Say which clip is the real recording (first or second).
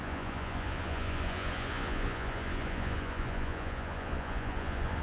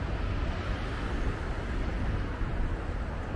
second